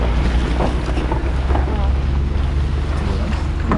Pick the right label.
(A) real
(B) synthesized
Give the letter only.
A